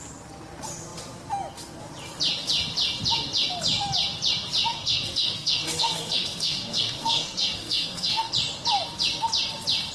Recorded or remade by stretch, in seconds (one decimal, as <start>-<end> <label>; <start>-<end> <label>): 0.0-4.7 recorded; 4.7-8.3 remade; 8.3-9.9 recorded